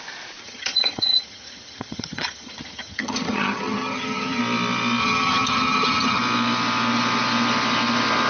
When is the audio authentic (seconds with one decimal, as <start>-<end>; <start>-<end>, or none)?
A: 0.0-0.4; 4.4-5.0; 6.2-8.3